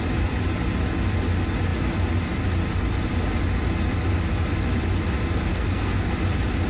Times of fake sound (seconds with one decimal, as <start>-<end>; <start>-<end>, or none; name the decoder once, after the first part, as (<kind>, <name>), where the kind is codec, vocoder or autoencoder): 5.5-6.1 (codec, SNAC)